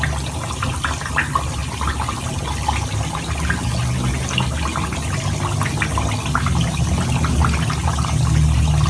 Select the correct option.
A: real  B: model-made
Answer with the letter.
A